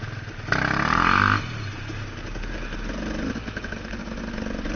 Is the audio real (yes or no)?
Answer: yes